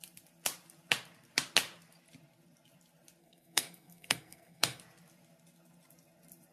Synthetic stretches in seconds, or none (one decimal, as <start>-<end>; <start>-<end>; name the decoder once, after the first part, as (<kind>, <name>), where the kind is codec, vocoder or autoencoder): 3.2-4.8 (codec, SNAC)